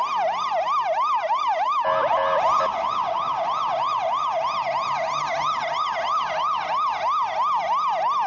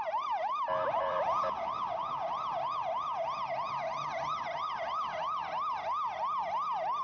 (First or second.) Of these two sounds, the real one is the first